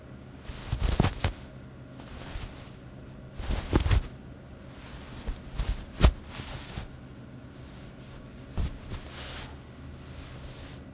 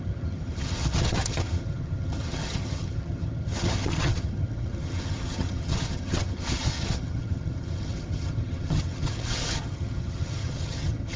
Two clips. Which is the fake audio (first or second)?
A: second